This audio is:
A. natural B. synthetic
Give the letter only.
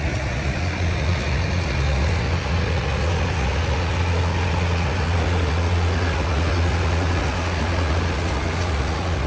B